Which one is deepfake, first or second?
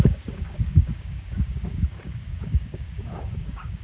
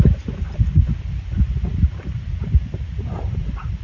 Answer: first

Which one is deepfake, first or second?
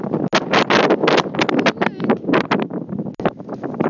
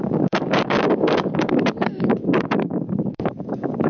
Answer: second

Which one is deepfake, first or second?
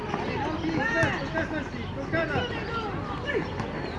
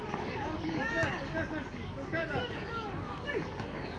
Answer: second